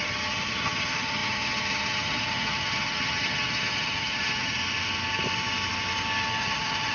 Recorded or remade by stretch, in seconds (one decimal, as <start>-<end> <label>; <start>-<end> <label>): 0.0-4.6 remade; 4.6-6.4 recorded; 6.4-6.9 remade

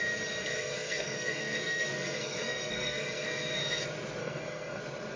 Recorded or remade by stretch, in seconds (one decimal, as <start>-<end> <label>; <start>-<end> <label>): 0.0-0.5 recorded; 0.5-3.6 remade; 3.6-4.2 recorded; 4.2-4.8 remade; 4.8-5.2 recorded

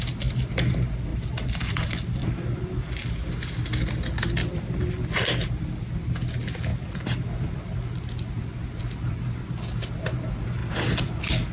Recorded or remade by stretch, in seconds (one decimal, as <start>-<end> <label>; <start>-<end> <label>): 0.0-1.1 recorded; 1.1-3.1 remade; 3.1-4.4 recorded; 4.4-5.8 remade; 5.8-6.7 recorded; 6.7-8.0 remade; 8.0-10.6 recorded; 10.6-11.5 remade

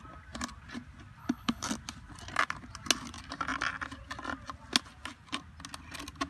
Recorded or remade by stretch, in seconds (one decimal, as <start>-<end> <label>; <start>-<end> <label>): 0.0-1.2 recorded; 1.2-1.7 remade; 1.7-6.3 recorded

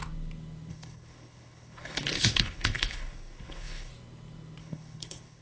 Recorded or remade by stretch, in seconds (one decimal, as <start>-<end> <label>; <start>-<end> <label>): 0.0-0.7 recorded; 0.7-3.9 remade; 3.9-4.6 recorded; 4.6-5.4 remade

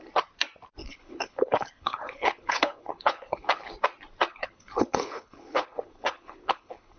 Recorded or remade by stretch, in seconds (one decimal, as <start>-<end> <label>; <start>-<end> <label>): 0.0-0.8 recorded; 0.8-3.7 remade; 3.7-4.3 recorded; 4.3-7.0 remade

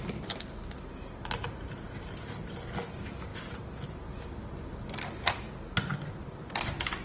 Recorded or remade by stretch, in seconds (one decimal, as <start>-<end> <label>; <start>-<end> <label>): 0.0-7.0 recorded